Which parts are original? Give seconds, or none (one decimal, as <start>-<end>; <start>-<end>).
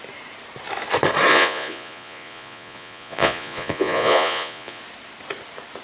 0.0-1.3; 4.8-5.8